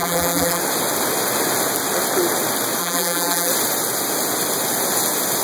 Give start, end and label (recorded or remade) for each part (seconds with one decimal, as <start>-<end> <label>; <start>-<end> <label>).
0.0-0.6 remade; 0.6-2.8 recorded; 2.8-3.5 remade; 3.5-5.4 recorded